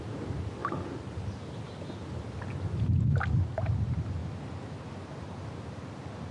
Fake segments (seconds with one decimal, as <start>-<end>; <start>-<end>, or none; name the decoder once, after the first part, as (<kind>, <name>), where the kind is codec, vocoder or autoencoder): none